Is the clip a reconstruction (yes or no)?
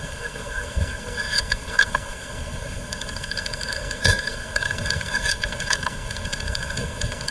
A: yes